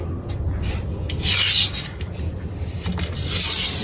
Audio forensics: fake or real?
real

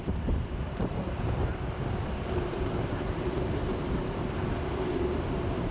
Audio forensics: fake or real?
fake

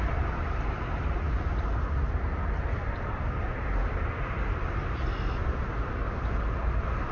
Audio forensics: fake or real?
real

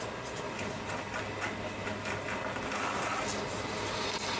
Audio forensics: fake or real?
real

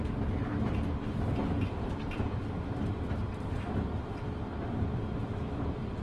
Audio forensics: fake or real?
fake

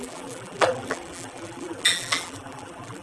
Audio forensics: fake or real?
fake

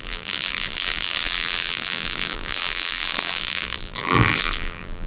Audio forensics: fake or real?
fake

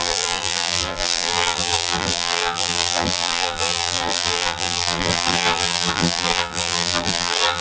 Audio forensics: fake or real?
fake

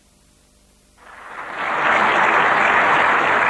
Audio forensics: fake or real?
real